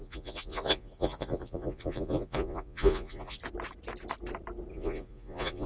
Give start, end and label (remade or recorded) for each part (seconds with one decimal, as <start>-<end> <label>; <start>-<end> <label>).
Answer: 0.0-3.4 remade; 3.4-4.7 recorded; 4.7-5.7 remade